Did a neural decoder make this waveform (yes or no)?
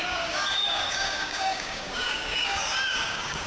yes